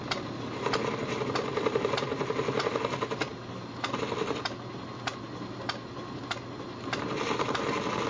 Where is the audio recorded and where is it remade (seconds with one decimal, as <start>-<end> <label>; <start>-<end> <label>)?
0.0-3.3 recorded; 3.3-3.9 remade; 3.9-8.1 recorded